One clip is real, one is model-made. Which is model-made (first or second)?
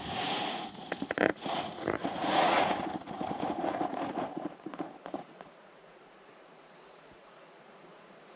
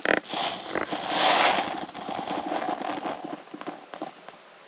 first